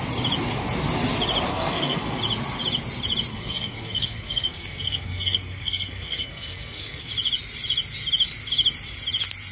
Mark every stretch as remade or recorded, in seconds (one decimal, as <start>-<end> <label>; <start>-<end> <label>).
0.0-1.5 recorded; 1.5-2.2 remade; 2.2-3.3 recorded; 3.3-7.1 remade; 7.1-9.5 recorded